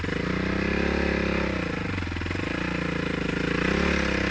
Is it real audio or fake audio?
real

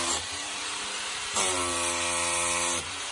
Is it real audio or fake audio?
fake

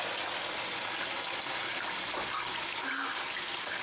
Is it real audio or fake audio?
real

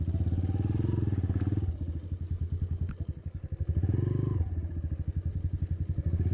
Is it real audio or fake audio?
real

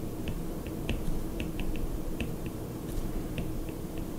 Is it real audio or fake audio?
fake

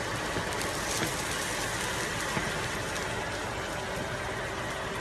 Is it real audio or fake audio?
real